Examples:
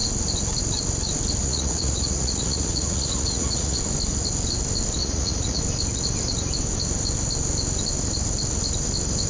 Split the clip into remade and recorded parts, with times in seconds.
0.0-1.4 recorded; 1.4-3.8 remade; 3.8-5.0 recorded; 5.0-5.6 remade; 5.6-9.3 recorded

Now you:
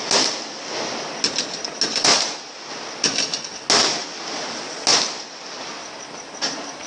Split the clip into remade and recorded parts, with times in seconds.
0.0-6.9 recorded

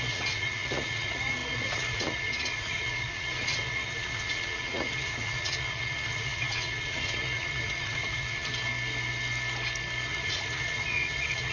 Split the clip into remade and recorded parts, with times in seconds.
0.0-8.5 remade; 8.5-10.1 recorded; 10.1-11.5 remade

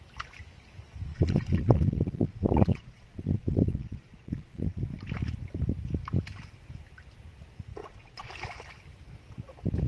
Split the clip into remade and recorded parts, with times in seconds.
0.0-1.1 recorded; 1.1-4.8 remade; 4.8-7.8 recorded; 7.8-8.3 remade; 8.3-9.9 recorded